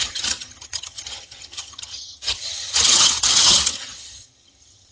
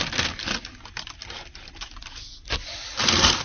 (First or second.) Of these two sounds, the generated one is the first